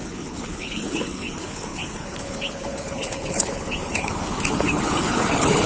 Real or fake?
fake